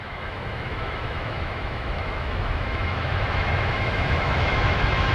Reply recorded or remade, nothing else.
remade